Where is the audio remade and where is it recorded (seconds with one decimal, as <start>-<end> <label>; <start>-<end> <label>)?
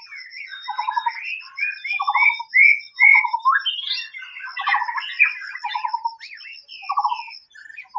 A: 0.0-3.1 recorded; 3.1-3.7 remade; 3.7-8.0 recorded